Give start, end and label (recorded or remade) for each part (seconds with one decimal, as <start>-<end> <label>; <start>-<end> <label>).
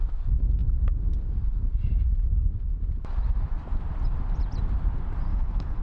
0.0-5.3 recorded; 5.3-5.8 remade